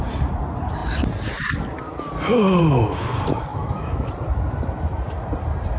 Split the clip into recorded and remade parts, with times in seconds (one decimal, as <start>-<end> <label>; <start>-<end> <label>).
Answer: 0.0-3.5 recorded; 3.5-4.1 remade; 4.1-5.8 recorded